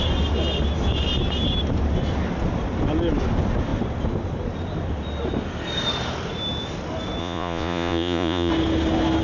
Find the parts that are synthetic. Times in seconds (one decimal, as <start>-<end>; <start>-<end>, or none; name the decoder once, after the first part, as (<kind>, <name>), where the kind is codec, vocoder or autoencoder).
7.2-8.5 (vocoder, Vocos)